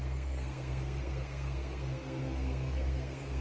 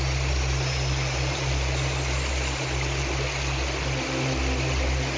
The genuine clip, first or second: second